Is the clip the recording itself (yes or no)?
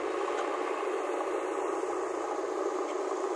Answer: yes